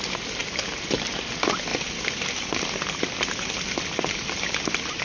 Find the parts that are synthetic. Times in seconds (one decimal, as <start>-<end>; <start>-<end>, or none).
none